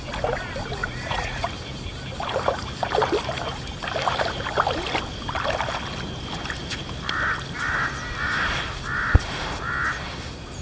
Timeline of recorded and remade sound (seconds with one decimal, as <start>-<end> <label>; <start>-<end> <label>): 0.0-0.8 recorded; 0.8-1.5 remade; 1.5-10.6 recorded